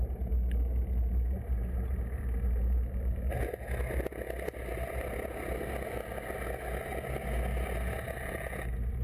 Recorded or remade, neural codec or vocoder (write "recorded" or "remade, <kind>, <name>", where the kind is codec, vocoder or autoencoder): recorded